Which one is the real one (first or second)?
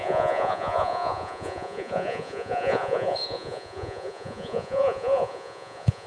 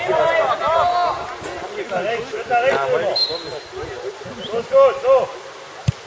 second